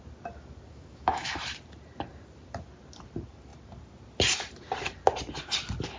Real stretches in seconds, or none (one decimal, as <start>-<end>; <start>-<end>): 0.0-0.7; 1.3-6.0

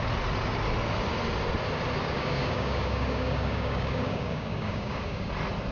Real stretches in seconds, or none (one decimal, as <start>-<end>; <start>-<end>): 0.0-2.0; 5.3-5.7

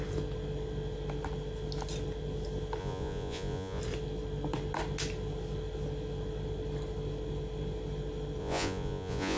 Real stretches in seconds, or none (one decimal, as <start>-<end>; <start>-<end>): 0.0-2.8; 3.8-8.4

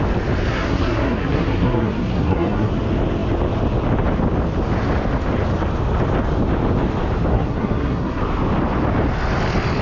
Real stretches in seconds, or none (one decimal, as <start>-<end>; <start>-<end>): 0.0-0.5; 2.7-7.3; 8.2-9.8